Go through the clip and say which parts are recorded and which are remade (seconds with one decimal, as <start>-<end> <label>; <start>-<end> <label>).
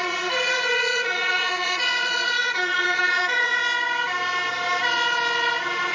0.0-3.6 remade; 3.6-5.9 recorded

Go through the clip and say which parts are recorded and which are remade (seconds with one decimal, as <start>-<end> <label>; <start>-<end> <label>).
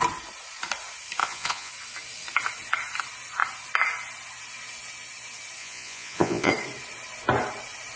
0.0-1.2 recorded; 1.2-1.7 remade; 1.7-5.6 recorded; 5.6-6.5 remade; 6.5-8.0 recorded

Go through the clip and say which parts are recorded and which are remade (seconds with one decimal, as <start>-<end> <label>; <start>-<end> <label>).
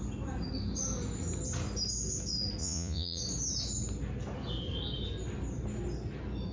0.0-2.6 recorded; 2.6-3.2 remade; 3.2-6.5 recorded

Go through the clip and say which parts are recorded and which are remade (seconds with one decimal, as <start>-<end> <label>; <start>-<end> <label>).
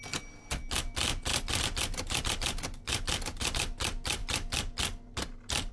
0.0-5.7 recorded